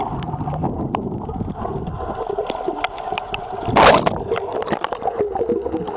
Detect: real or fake real